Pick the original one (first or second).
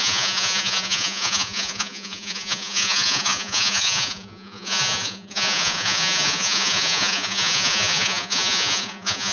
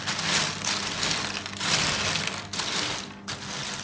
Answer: second